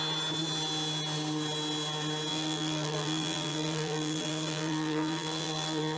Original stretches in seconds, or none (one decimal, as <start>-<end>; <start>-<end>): 0.0-2.3